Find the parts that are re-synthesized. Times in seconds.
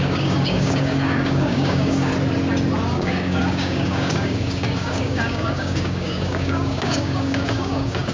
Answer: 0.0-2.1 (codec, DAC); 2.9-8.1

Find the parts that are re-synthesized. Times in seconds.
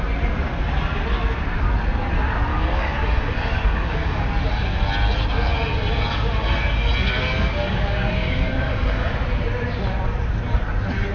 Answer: 2.5-4.3 (codec, DAC); 7.0-9.1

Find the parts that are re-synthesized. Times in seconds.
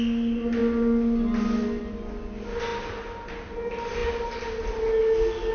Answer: none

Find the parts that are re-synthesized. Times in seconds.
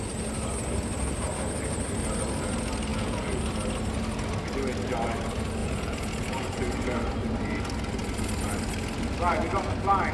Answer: 2.9-3.4 (vocoder, Vocos); 5.6-7.0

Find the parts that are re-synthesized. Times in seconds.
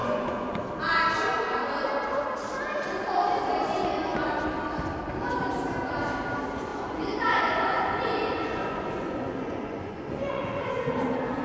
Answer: 0.0-0.6 (vocoder, Vocos); 6.7-10.7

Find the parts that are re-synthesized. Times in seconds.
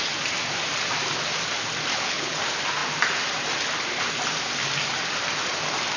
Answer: 1.9-2.4 (codec, HILCodec)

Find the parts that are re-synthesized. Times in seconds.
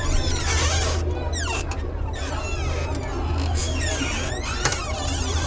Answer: none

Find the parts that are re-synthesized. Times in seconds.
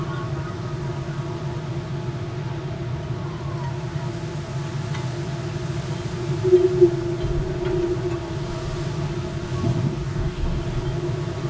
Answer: 9.8-10.6 (codec, DAC)